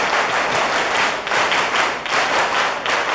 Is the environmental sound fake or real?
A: real